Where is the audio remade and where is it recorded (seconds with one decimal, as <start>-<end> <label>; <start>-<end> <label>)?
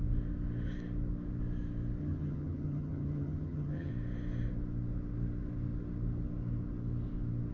0.0-2.0 recorded; 2.0-3.9 remade; 3.9-7.5 recorded